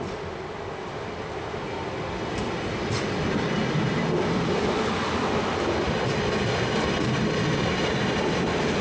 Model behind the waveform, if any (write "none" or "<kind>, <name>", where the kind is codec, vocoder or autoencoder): none